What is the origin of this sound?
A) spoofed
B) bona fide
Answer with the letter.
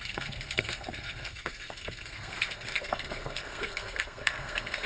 A